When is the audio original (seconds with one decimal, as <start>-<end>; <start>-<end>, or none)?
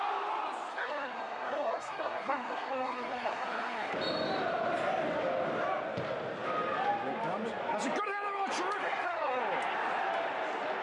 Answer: 0.0-0.7; 3.9-8.8; 9.4-10.8